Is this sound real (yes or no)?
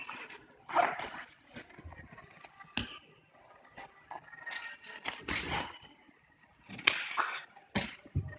yes